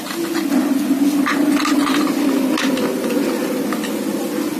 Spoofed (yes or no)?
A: no